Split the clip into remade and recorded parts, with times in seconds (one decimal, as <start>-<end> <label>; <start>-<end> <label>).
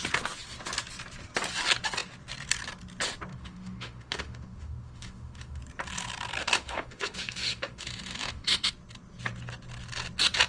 0.0-3.3 recorded; 3.3-5.6 remade; 5.6-6.4 recorded; 6.4-8.7 remade; 8.7-10.5 recorded